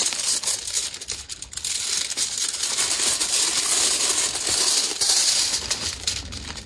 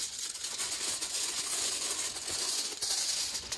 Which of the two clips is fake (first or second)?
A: second